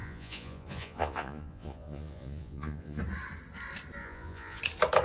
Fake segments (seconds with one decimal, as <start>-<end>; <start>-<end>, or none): 0.0-3.0; 4.0-4.6